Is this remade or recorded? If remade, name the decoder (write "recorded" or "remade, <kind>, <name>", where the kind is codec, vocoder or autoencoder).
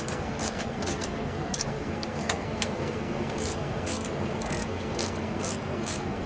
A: remade, codec, SNAC